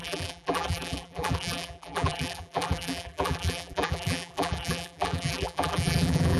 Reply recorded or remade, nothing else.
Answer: remade